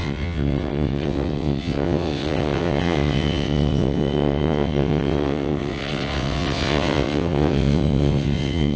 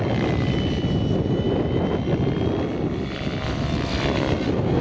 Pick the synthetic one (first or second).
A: first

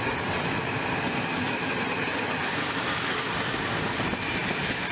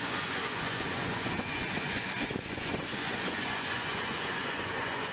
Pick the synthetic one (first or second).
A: second